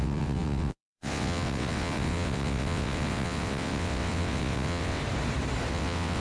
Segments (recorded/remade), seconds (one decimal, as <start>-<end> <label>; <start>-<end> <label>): 0.0-5.0 remade; 5.0-5.7 recorded; 5.7-6.2 remade